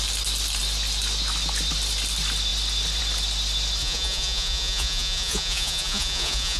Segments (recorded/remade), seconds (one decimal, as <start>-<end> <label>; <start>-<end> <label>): 0.0-3.8 recorded; 3.8-6.6 remade